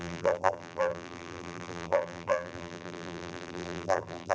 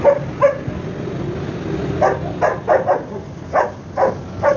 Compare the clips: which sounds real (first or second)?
second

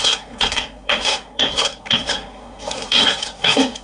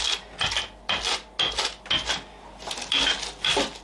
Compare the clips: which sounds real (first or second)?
second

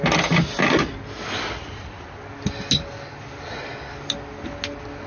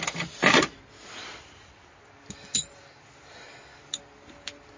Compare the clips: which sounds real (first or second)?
first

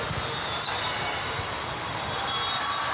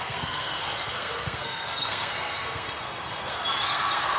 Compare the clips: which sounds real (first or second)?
first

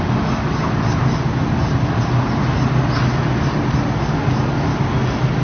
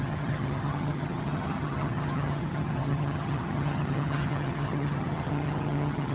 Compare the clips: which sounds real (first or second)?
first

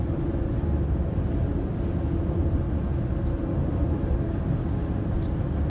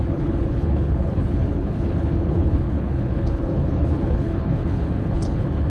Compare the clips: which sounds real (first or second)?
first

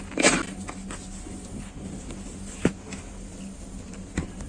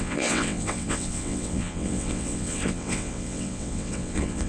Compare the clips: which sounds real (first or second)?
first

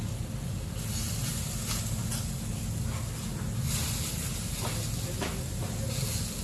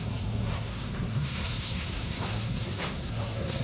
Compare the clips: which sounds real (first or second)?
first